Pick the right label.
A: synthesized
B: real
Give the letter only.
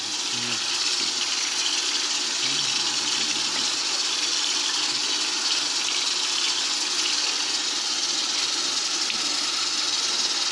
B